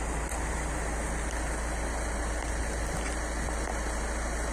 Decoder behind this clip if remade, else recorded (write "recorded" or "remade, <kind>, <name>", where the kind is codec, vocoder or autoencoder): recorded